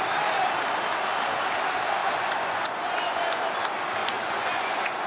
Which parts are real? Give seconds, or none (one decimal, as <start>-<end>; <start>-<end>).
0.0-2.0; 3.5-4.0